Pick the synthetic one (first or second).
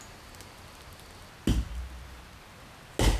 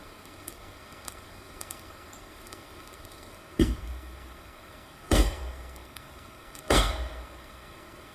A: second